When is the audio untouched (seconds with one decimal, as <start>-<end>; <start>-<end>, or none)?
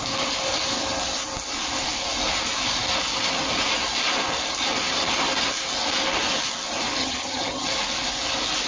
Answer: 0.0-7.0; 7.7-8.7